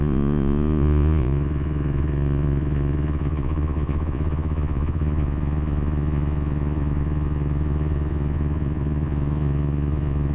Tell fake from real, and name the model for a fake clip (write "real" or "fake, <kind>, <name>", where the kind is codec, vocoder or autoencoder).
fake, vocoder, Vocos